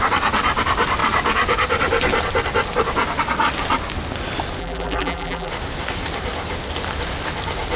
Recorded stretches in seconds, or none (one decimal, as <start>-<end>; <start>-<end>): 0.0-4.6; 5.5-7.8